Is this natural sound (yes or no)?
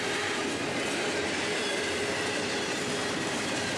yes